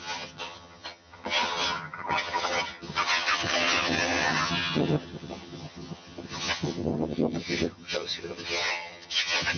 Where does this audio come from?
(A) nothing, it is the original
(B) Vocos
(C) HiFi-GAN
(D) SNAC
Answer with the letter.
C